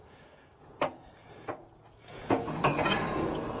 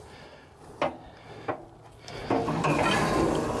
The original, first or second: second